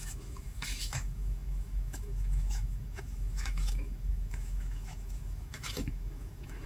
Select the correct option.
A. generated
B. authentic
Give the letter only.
A